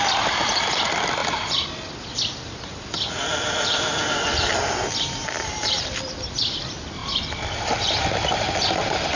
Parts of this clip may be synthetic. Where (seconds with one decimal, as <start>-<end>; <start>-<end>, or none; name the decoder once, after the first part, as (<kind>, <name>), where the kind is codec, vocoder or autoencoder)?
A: 1.2-6.3 (vocoder, BigVGAN v2)